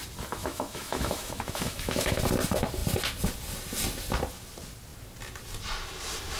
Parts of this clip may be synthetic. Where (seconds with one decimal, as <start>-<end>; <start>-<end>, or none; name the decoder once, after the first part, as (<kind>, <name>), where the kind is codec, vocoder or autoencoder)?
0.4-2.2 (autoencoder, DAC-VAE)